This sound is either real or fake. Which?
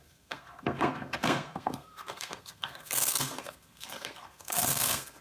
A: fake